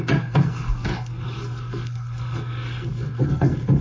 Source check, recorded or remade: remade